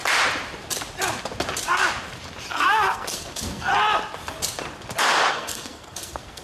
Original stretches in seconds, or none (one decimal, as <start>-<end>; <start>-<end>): 0.0-2.5; 3.7-5.3